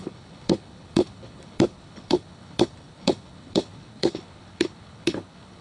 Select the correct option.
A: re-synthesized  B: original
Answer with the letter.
A